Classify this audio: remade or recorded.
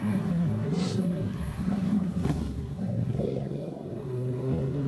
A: remade